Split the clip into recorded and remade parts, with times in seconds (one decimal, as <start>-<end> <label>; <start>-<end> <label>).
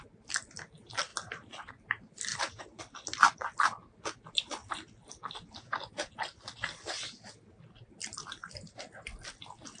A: 0.0-2.3 recorded; 2.3-2.8 remade; 2.8-8.1 recorded; 8.1-8.9 remade; 8.9-9.8 recorded